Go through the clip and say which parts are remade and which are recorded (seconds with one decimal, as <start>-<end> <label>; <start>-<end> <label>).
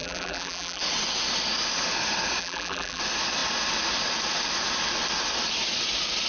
0.0-0.8 remade; 0.8-2.4 recorded; 2.4-3.0 remade; 3.0-6.3 recorded